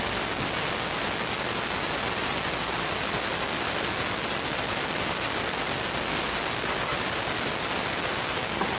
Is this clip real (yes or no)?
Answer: yes